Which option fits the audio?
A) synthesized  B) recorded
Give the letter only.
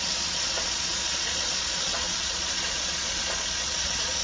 A